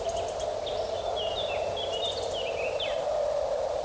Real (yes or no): yes